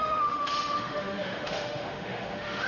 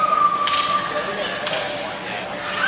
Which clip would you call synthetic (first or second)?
first